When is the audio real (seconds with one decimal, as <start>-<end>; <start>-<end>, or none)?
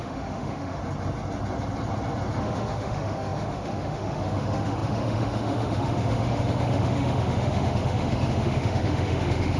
0.8-2.4